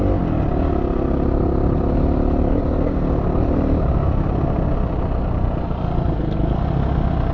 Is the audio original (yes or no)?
yes